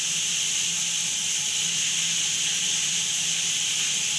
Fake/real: real